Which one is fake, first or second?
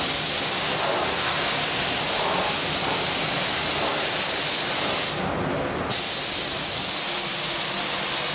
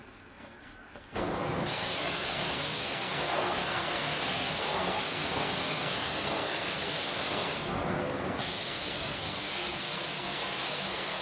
second